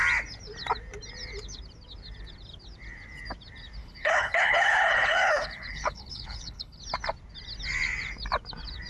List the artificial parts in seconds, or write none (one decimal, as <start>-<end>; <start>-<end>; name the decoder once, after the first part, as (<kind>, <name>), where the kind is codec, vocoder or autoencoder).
3.8-6.8 (codec, HILCodec)